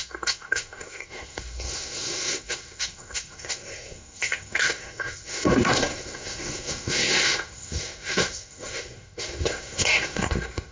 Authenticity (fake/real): fake